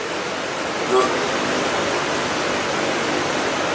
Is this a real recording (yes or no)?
yes